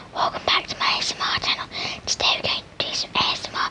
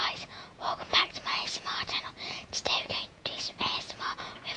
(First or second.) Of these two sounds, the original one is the first